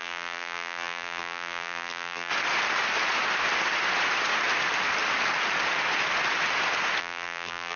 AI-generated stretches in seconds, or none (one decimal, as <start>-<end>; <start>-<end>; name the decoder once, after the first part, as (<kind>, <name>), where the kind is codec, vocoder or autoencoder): 0.0-2.3 (vocoder, BigVGAN v2); 7.0-7.8